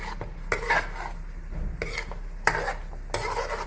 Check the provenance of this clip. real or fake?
real